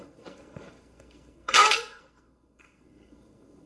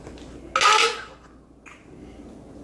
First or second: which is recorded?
second